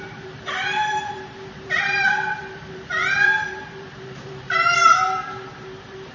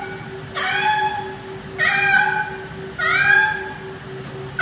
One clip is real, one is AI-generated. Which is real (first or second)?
second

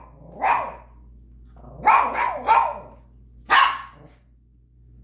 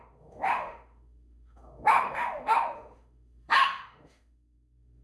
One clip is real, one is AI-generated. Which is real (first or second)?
first